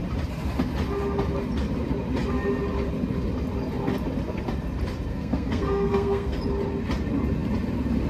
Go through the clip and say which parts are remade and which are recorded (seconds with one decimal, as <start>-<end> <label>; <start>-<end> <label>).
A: 0.0-5.1 recorded; 5.1-6.4 remade; 6.4-8.1 recorded